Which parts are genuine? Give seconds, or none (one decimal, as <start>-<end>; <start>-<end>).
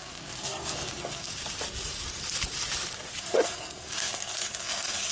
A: 1.3-3.2